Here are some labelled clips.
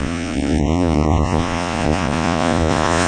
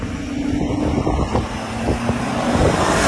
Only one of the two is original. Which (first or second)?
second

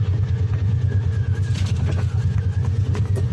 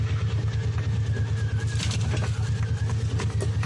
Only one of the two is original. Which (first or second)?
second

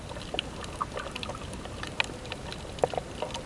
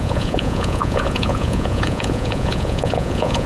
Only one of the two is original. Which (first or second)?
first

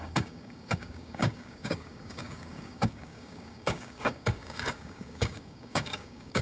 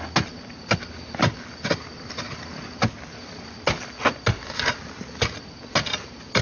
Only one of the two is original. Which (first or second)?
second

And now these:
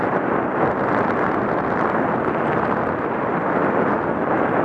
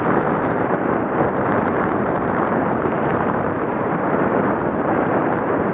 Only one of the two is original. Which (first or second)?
first